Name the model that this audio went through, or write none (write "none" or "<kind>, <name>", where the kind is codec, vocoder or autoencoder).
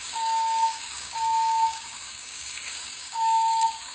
codec, DAC